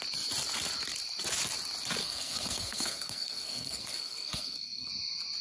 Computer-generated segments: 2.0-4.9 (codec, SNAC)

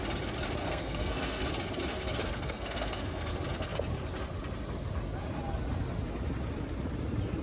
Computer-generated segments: 0.6-1.5 (codec, SNAC); 1.9-3.3

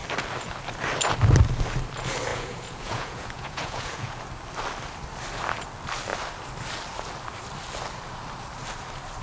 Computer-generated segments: 2.3-4.2 (vocoder, Vocos)